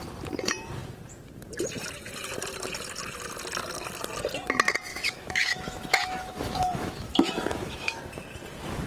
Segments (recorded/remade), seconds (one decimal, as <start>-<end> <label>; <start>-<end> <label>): 0.0-4.9 recorded; 4.9-8.0 remade; 8.0-8.9 recorded